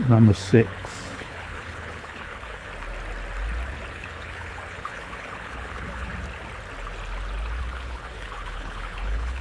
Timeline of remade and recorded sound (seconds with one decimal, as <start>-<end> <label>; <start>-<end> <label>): 0.0-2.7 remade; 2.7-3.9 recorded; 3.9-6.1 remade; 6.1-7.6 recorded; 7.6-9.4 remade